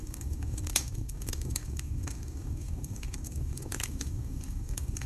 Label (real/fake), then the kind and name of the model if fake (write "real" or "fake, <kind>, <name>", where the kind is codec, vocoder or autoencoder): fake, codec, DAC